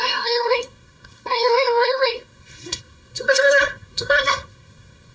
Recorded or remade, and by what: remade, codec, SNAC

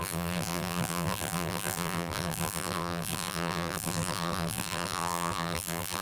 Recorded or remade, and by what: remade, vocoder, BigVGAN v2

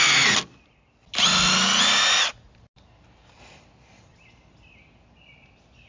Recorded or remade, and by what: recorded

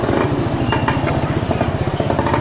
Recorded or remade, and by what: recorded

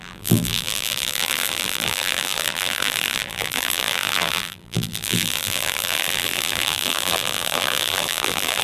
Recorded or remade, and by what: remade, vocoder, BigVGAN v2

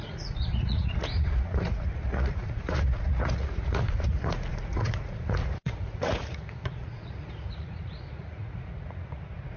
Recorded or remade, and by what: remade, vocoder, Vocos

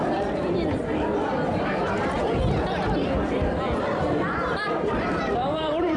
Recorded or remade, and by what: remade, vocoder, BigVGAN v2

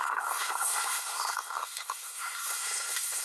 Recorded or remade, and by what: remade, codec, SNAC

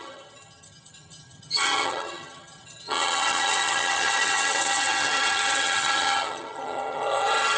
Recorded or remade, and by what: remade, vocoder, HiFi-GAN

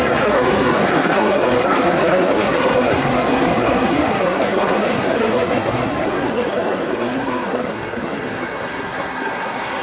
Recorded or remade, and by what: remade, codec, SNAC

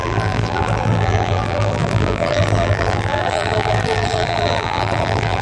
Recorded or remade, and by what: remade, vocoder, BigVGAN v2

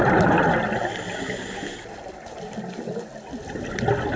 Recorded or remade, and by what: recorded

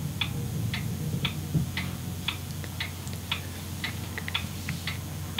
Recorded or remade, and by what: recorded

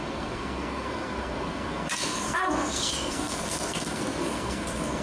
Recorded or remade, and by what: remade, codec, SNAC